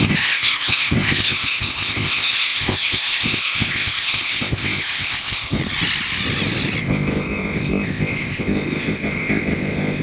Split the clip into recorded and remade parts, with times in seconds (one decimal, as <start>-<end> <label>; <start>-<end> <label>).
0.0-5.6 remade; 5.6-6.8 recorded; 6.8-10.0 remade